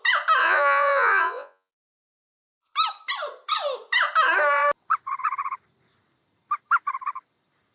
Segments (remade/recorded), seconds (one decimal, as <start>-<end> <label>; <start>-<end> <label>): 0.0-0.4 recorded; 0.4-1.7 remade; 1.7-7.7 recorded